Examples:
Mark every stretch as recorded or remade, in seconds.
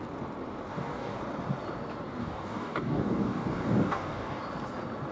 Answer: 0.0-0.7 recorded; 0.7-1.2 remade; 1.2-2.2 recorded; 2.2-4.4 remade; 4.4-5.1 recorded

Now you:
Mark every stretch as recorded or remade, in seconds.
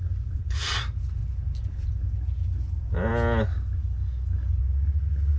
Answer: 0.0-3.8 recorded; 3.8-4.6 remade; 4.6-5.4 recorded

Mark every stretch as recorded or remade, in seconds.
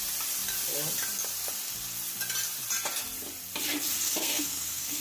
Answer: 0.0-4.2 recorded; 4.2-5.0 remade